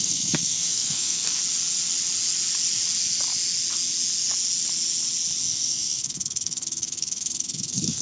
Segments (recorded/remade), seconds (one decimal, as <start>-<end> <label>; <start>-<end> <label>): 0.0-1.4 remade; 1.4-5.4 recorded; 5.4-8.0 remade